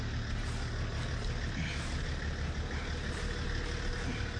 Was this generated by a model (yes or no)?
no